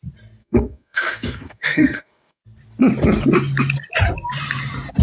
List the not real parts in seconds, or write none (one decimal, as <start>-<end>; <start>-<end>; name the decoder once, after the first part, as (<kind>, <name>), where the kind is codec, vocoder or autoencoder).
0.4-2.4 (codec, SNAC)